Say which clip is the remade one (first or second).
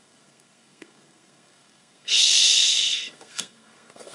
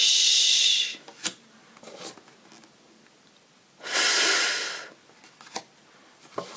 first